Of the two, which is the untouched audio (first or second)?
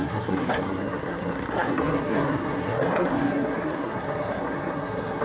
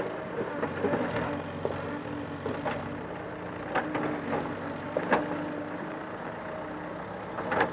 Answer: second